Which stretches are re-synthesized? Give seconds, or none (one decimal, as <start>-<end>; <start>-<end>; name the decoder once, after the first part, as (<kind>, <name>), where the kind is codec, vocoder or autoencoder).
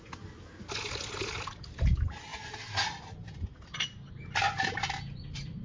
none